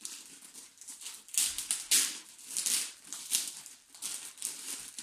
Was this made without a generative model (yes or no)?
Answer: yes